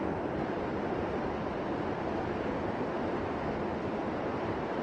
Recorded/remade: recorded